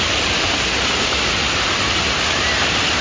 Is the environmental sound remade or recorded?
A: recorded